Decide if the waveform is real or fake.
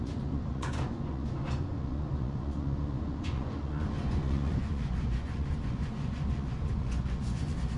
fake